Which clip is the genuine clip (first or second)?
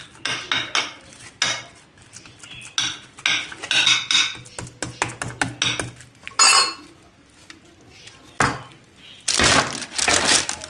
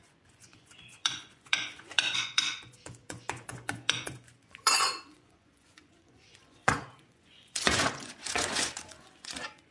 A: first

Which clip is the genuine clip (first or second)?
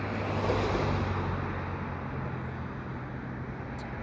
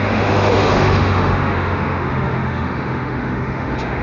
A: first